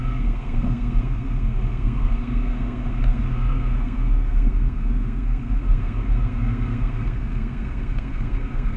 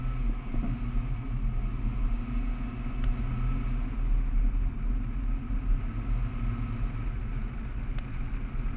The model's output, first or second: first